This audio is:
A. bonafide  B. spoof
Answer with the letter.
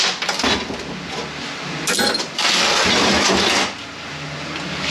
A